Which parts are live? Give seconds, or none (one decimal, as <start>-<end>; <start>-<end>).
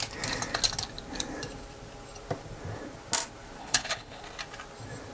0.0-3.6; 4.2-5.1